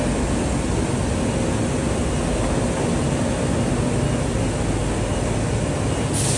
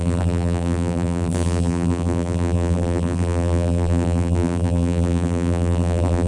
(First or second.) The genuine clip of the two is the first